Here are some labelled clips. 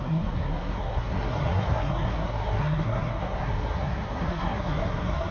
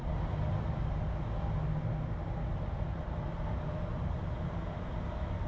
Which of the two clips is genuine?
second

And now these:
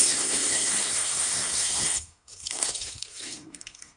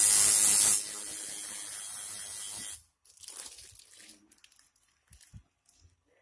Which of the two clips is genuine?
second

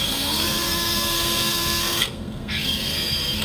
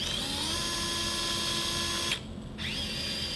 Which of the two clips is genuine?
second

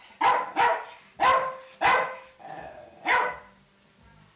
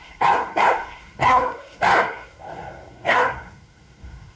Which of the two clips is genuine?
first